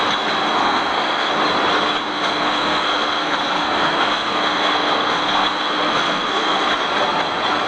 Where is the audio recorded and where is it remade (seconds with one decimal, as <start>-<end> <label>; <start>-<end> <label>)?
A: 0.0-0.6 recorded; 0.6-1.3 remade; 1.3-2.1 recorded; 2.1-6.7 remade; 6.7-7.7 recorded